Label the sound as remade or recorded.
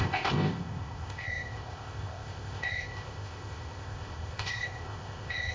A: remade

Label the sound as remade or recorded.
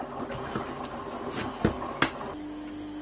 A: recorded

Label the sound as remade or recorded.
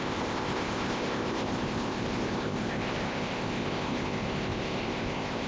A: remade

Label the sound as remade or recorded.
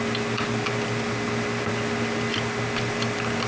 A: recorded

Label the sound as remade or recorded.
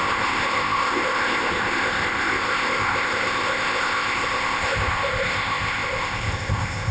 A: remade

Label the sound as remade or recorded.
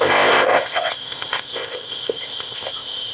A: remade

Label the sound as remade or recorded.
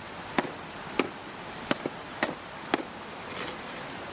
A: recorded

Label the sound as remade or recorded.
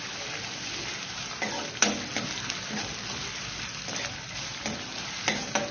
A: recorded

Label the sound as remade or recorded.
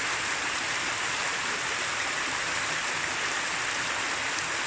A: recorded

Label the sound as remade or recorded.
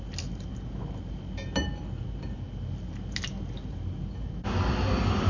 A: recorded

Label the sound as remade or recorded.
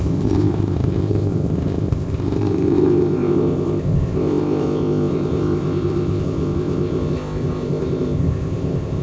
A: remade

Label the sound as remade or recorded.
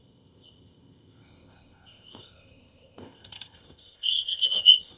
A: remade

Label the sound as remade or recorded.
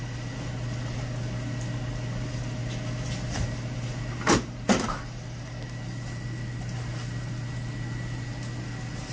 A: recorded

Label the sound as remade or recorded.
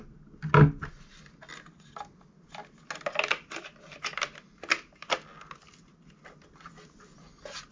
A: recorded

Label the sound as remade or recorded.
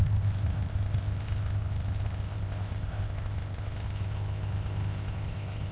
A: remade